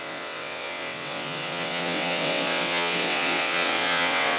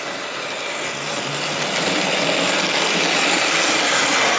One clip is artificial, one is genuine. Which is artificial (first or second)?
first